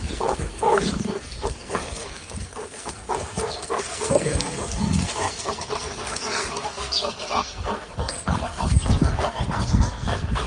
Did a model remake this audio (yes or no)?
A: yes